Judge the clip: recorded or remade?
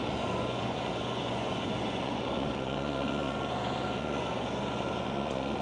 remade